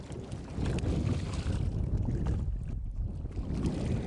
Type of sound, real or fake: real